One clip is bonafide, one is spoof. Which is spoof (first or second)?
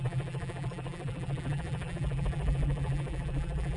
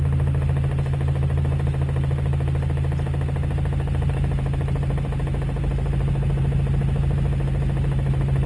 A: first